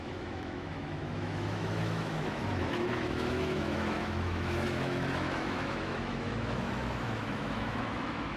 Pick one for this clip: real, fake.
fake